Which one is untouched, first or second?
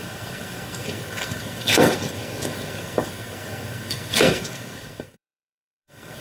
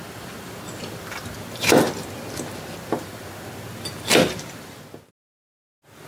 second